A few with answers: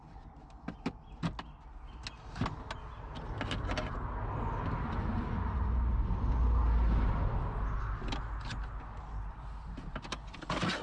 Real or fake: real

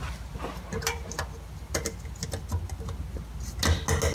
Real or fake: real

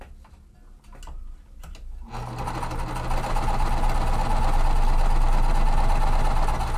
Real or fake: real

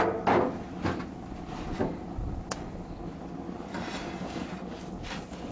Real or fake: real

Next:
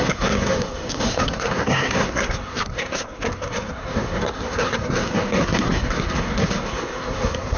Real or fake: fake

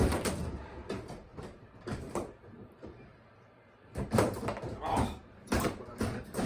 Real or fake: fake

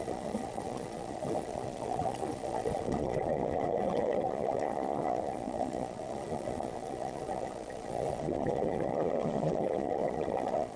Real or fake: fake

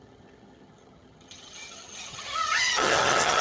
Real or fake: fake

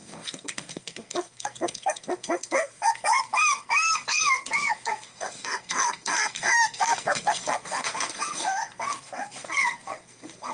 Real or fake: fake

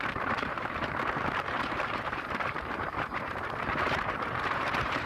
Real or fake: fake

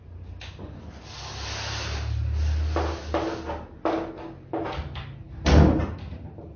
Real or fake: real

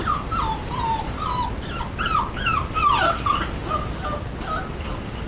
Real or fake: real